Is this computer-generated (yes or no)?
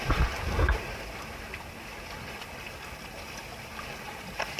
no